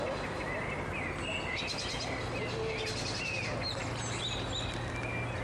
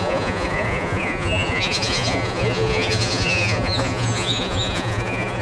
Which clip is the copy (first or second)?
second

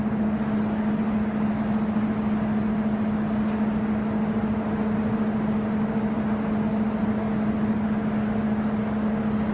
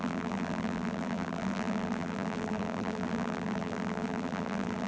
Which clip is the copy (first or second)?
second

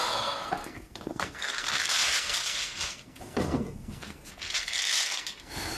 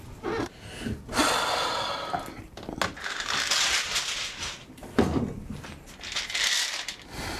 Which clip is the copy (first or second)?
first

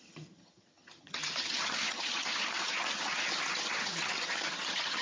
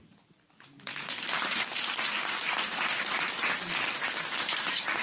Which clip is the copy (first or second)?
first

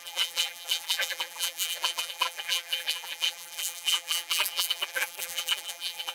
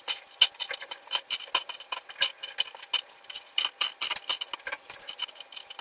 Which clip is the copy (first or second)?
first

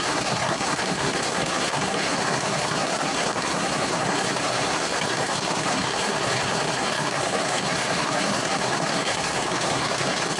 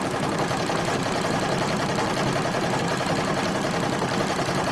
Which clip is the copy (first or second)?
first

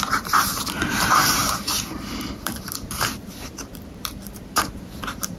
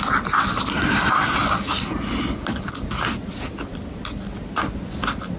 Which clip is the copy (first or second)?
first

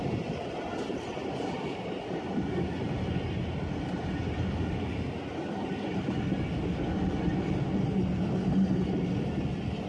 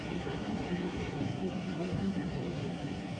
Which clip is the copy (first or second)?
second